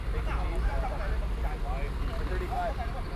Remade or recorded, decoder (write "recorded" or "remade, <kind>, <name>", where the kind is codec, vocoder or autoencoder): recorded